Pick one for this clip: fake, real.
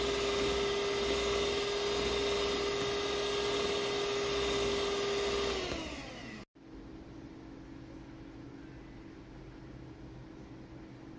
real